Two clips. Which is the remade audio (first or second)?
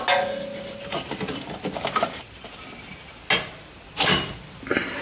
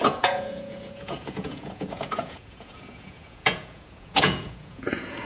second